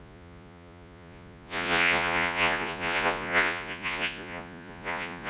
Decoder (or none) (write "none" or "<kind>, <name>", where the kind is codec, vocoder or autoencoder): vocoder, Vocos